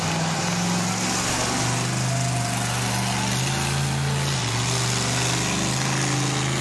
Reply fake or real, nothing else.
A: real